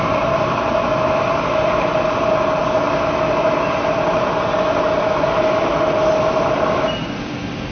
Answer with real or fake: real